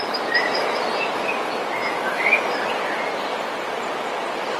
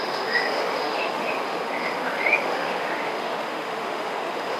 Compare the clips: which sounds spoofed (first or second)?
second